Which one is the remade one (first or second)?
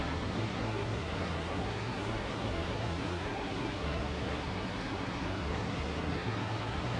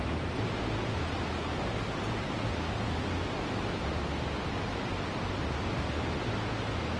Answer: first